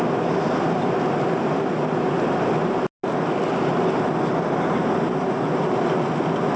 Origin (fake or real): real